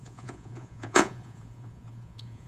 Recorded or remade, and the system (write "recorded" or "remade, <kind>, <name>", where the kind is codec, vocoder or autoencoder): remade, vocoder, Vocos